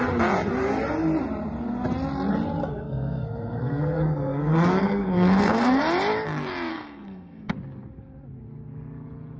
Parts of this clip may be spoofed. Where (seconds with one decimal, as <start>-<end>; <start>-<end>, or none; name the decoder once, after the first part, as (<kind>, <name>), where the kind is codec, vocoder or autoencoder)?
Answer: 2.6-5.8 (codec, SNAC); 6.7-7.5